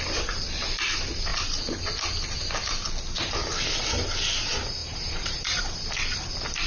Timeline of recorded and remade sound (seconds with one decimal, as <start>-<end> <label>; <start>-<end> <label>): 0.0-4.8 recorded; 4.8-5.6 remade; 5.6-6.7 recorded